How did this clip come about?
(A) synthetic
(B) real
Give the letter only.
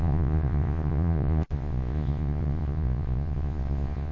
A